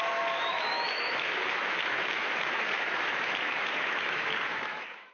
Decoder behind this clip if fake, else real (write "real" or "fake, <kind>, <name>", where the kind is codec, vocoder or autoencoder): fake, autoencoder, DAC-VAE